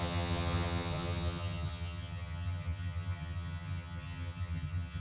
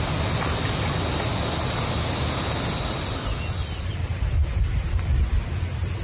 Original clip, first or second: second